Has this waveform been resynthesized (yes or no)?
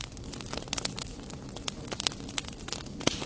no